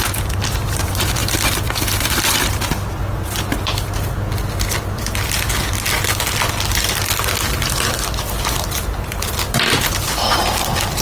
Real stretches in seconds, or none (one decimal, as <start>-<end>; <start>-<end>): 0.0-11.0